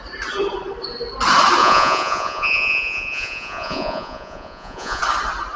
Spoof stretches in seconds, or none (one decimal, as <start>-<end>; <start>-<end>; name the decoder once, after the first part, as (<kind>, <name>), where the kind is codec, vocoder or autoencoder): 1.6-5.0 (vocoder, Vocos)